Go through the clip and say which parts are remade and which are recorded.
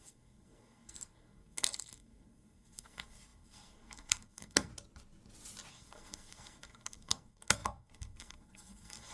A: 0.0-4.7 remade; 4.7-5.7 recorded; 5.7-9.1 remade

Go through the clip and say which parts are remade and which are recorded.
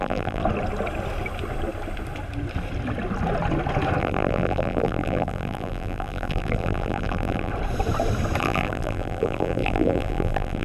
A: 0.0-0.4 remade; 0.4-4.0 recorded; 4.0-7.5 remade; 7.5-8.4 recorded; 8.4-10.6 remade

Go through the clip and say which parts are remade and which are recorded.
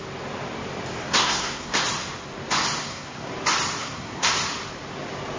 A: 0.0-1.0 recorded; 1.0-1.8 remade; 1.8-2.8 recorded; 2.8-3.3 remade; 3.3-3.8 recorded; 3.8-4.3 remade; 4.3-5.4 recorded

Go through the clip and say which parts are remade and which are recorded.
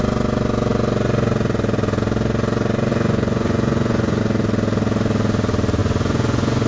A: 0.0-2.9 recorded; 2.9-4.2 remade; 4.2-5.8 recorded; 5.8-6.7 remade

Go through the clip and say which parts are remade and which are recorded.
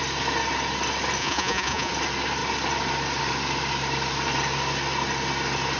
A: 0.0-1.2 recorded; 1.2-1.9 remade; 1.9-5.8 recorded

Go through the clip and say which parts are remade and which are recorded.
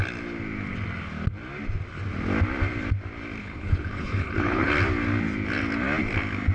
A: 0.0-3.4 recorded; 3.4-4.7 remade; 4.7-6.5 recorded